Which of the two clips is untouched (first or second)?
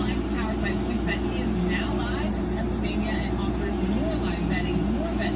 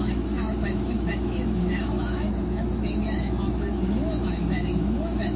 first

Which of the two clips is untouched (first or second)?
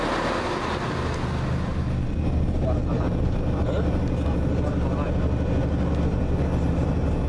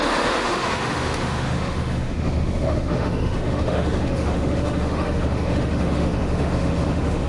first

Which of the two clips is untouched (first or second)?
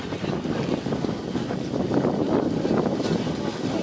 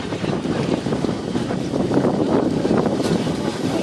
first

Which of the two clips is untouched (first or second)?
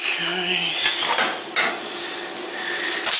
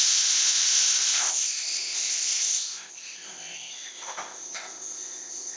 first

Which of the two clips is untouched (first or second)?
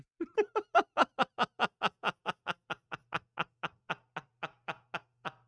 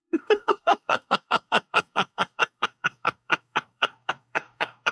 first